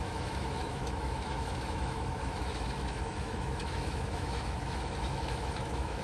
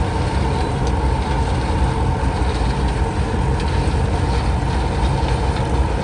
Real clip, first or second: second